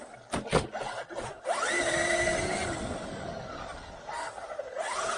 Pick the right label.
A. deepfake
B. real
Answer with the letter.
B